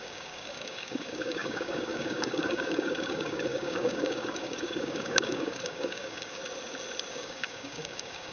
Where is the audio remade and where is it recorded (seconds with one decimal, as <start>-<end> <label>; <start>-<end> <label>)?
0.0-6.4 remade; 6.4-7.1 recorded; 7.1-8.3 remade